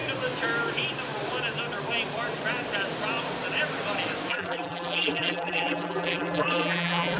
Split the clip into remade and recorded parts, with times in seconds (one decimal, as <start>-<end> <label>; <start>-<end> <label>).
0.0-4.3 recorded; 4.3-7.2 remade